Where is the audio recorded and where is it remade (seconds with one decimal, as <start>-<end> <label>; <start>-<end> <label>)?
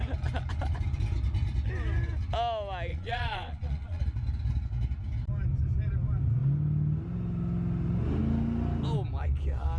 0.0-2.9 recorded; 2.9-4.0 remade; 4.0-9.8 recorded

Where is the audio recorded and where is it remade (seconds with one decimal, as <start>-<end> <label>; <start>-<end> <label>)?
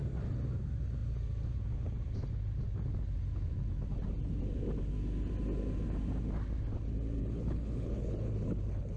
0.0-7.2 recorded; 7.2-9.0 remade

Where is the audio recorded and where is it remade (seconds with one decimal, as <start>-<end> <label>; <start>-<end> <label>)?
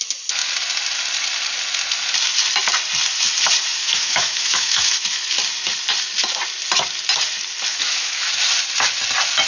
0.0-3.8 recorded; 3.8-5.3 remade; 5.3-7.7 recorded; 7.7-8.3 remade; 8.3-9.5 recorded